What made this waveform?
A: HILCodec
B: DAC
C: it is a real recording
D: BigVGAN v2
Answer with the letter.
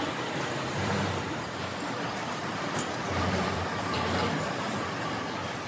D